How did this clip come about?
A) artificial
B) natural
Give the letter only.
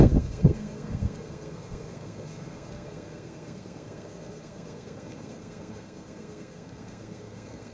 A